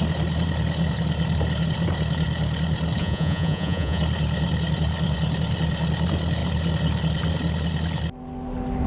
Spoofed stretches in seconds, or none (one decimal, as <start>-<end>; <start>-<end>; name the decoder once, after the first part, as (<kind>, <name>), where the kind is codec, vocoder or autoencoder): 3.0-4.0 (vocoder, Vocos)